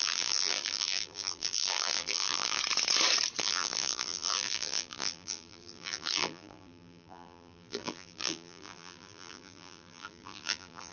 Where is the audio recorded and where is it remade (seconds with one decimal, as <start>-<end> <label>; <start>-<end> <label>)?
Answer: 0.0-2.6 remade; 2.6-3.4 recorded; 3.4-10.9 remade